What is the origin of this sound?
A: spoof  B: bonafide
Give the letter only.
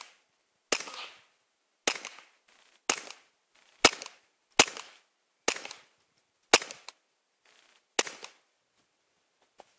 B